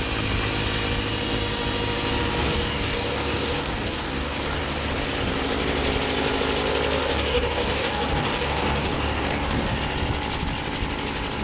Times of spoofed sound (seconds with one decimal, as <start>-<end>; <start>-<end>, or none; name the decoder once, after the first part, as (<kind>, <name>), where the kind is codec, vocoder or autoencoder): 2.4-4.6 (codec, DAC); 7.0-9.8